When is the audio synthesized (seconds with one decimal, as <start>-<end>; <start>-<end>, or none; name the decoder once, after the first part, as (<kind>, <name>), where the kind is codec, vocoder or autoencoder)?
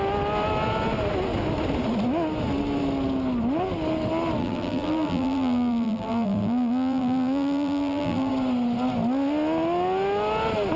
4.4-8.3 (vocoder, BigVGAN v2)